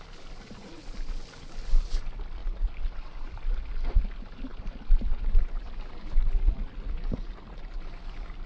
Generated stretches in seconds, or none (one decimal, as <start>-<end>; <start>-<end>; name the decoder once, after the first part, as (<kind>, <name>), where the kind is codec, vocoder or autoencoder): none